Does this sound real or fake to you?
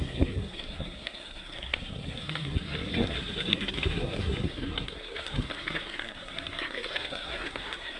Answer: fake